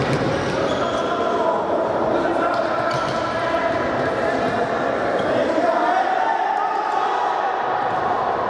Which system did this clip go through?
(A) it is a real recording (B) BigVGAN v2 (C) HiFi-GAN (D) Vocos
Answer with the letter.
A